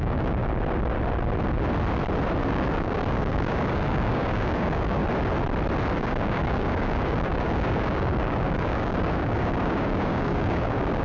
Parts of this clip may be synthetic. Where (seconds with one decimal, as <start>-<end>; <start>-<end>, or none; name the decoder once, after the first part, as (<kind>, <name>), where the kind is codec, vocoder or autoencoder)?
0.0-0.4 (codec, DAC); 2.5-5.0; 6.0-11.0